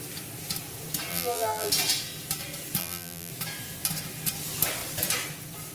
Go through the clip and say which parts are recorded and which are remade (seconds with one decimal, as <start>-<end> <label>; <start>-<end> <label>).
0.0-1.1 recorded; 1.1-1.7 remade; 1.7-2.8 recorded; 2.8-3.3 remade; 3.3-5.7 recorded

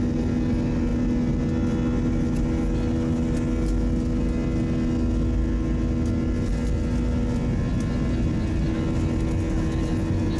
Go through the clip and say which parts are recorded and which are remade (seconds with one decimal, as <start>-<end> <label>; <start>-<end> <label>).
0.0-10.4 recorded